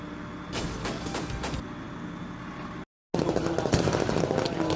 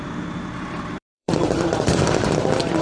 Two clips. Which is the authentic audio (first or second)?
first